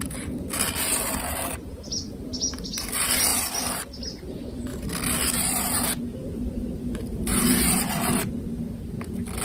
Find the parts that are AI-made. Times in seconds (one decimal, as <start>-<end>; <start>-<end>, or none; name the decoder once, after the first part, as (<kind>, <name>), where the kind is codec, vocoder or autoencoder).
6.2-8.3 (vocoder, BigVGAN v2)